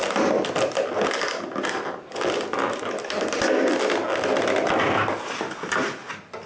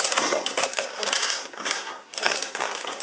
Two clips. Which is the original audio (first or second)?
first